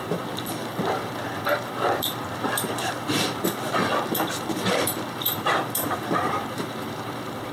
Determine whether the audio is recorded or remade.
remade